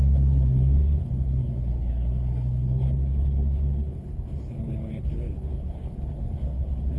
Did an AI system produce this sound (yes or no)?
yes